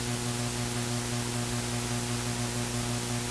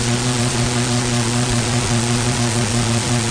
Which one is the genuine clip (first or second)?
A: first